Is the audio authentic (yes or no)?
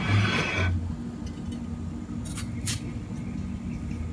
yes